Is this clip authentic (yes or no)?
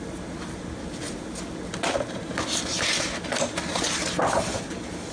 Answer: yes